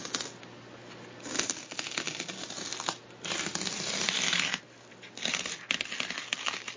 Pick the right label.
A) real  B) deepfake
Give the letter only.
A